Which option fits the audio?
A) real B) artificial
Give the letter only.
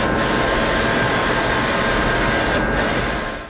A